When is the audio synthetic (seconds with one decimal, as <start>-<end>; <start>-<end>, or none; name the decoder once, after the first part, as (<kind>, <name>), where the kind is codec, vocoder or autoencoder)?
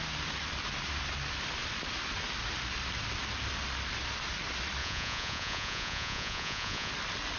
4.8-6.9 (vocoder, Vocos)